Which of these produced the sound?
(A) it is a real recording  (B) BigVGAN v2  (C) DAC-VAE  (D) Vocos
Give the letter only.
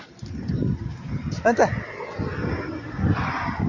A